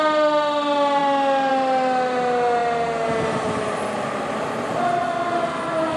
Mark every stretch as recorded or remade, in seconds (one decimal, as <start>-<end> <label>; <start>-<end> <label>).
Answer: 0.0-6.0 recorded